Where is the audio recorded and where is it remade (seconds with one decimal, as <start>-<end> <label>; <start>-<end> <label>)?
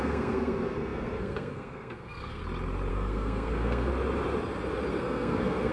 0.0-2.4 remade; 2.4-2.9 recorded; 2.9-3.9 remade; 3.9-4.9 recorded; 4.9-5.7 remade